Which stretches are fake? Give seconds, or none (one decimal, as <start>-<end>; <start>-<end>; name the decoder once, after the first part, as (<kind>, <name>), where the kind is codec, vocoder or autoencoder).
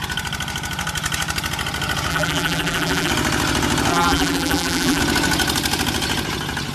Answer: 2.1-3.1 (vocoder, BigVGAN v2); 3.9-5.0